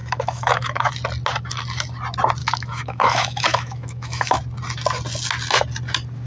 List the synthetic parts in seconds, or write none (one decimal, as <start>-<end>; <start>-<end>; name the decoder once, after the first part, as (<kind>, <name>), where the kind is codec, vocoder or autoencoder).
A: 0.0-0.9 (autoencoder, DAC-VAE); 2.4-4.4